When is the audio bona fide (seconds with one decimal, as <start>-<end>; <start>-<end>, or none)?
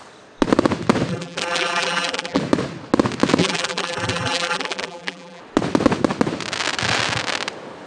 0.0-1.1; 2.4-3.4; 5.4-7.9